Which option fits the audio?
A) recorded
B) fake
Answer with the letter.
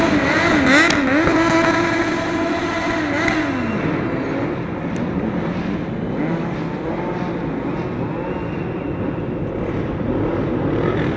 A